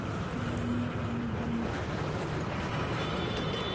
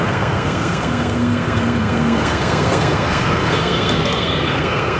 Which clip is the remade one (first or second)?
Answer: second